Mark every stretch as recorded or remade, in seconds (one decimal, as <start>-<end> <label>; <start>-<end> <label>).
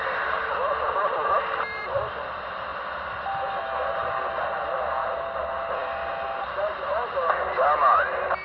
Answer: 0.0-8.4 recorded